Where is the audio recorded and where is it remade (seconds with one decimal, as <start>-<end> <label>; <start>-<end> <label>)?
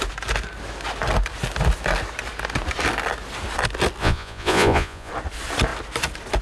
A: 0.0-4.0 recorded; 4.0-5.1 remade; 5.1-6.4 recorded